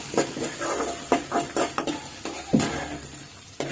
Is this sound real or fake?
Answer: real